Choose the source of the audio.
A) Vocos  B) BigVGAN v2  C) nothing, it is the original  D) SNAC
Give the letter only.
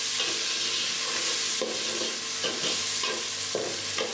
C